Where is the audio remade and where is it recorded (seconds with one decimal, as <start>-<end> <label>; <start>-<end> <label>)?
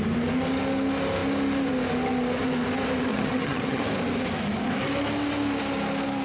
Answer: 0.0-3.1 recorded; 3.1-3.8 remade; 3.8-6.2 recorded